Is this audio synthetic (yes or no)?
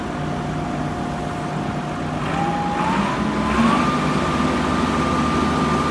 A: no